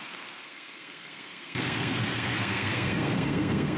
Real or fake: fake